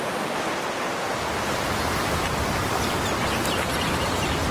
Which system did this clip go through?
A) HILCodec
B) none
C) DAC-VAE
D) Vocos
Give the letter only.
B